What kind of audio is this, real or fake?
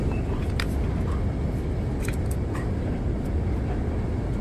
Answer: real